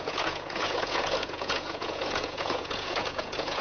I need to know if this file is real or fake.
fake